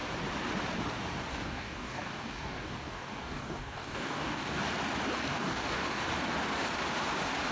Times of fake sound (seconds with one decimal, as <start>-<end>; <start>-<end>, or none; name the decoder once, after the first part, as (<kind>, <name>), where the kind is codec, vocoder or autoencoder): 1.3-4.6 (codec, DAC); 5.3-6.0